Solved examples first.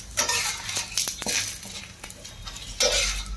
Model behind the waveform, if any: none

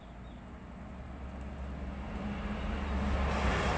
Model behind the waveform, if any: none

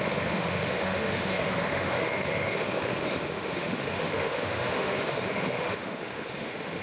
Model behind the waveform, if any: autoencoder, DAC-VAE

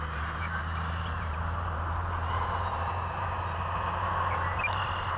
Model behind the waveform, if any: vocoder, BigVGAN v2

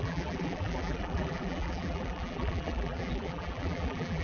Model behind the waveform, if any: vocoder, BigVGAN v2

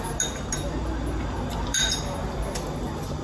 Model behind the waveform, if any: none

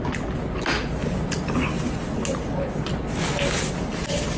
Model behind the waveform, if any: none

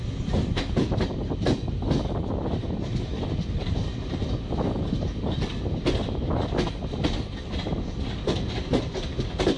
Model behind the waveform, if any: none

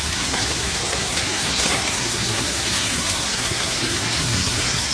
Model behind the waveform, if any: codec, SNAC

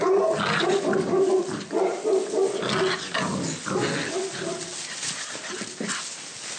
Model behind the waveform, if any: none